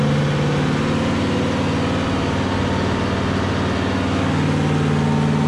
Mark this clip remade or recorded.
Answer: recorded